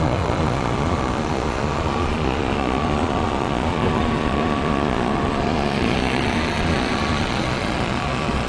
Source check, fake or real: fake